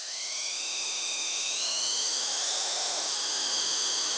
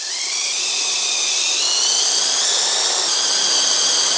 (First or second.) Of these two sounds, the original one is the second